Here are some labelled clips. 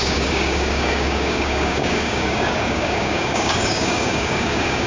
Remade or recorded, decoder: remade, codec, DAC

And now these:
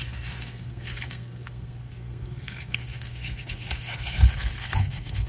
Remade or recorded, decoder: remade, codec, SNAC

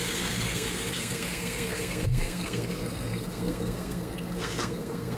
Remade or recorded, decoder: remade, codec, SNAC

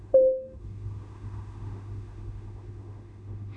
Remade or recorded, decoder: remade, autoencoder, DAC-VAE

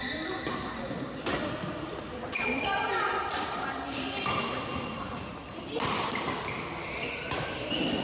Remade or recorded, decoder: remade, vocoder, BigVGAN v2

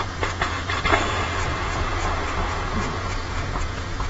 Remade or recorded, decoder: remade, vocoder, Vocos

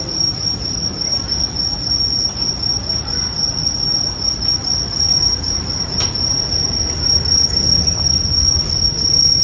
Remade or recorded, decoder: recorded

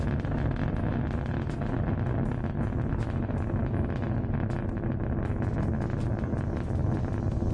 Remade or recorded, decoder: recorded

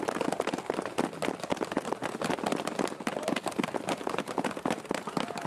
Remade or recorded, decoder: recorded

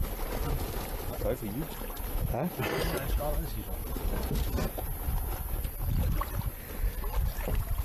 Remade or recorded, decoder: recorded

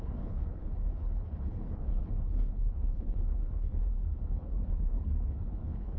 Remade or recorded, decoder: remade, codec, HILCodec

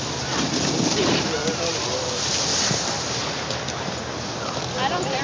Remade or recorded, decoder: remade, vocoder, BigVGAN v2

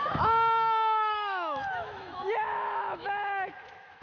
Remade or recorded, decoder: remade, autoencoder, DAC-VAE